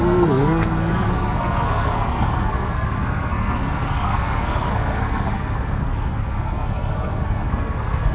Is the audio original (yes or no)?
no